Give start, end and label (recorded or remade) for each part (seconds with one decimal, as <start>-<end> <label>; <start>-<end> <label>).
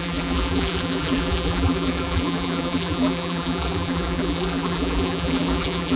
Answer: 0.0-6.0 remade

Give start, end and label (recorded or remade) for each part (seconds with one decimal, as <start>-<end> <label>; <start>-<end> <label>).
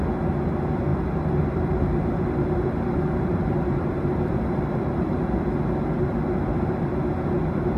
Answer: 0.0-0.9 recorded; 0.9-5.6 remade; 5.6-7.8 recorded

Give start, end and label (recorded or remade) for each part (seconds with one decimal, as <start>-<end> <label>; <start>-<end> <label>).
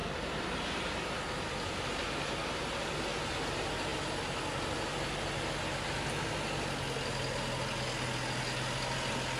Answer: 0.0-1.1 remade; 1.1-9.4 recorded